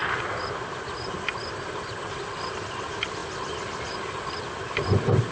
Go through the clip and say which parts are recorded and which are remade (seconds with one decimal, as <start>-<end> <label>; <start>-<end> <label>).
0.0-5.3 recorded